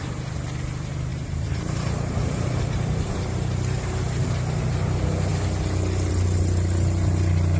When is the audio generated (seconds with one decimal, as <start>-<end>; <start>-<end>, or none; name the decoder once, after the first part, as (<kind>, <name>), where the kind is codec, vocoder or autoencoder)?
1.1-4.3 (vocoder, BigVGAN v2)